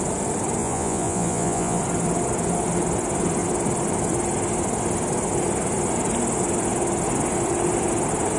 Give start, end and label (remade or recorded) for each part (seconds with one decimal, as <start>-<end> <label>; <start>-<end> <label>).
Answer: 0.0-0.6 recorded; 0.6-1.8 remade; 1.8-8.4 recorded